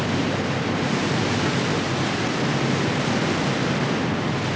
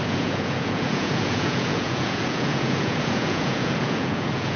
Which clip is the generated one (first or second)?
second